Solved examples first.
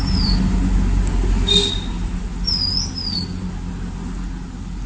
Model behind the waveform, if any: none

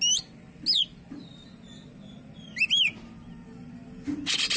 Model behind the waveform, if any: none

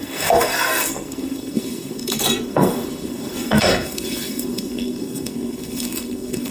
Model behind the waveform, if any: codec, SNAC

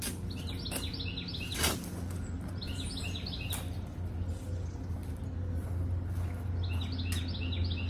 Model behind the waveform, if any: none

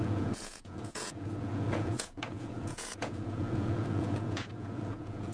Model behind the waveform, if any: vocoder, Vocos